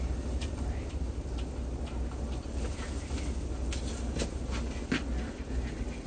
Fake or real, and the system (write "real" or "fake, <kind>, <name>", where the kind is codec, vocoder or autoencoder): real